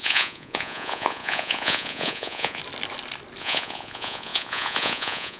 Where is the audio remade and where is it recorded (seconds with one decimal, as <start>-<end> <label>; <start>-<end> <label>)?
0.0-2.6 remade; 2.6-3.4 recorded; 3.4-5.4 remade